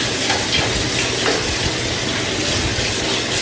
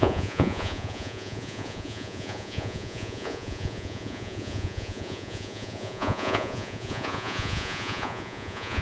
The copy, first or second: second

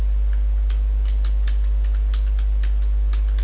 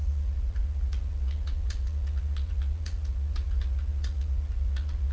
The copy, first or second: second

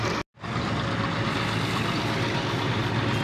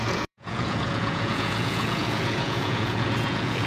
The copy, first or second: second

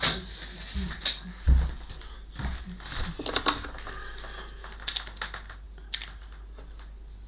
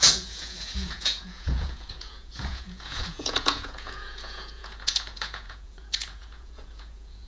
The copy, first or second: second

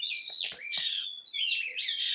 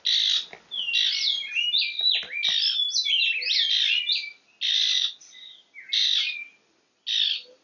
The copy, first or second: first